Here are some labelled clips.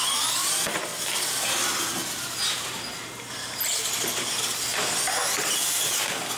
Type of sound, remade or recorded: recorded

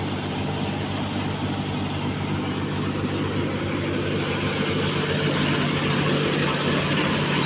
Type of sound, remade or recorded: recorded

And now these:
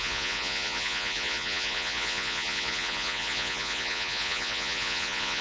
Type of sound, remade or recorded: remade